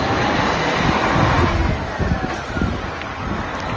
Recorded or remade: recorded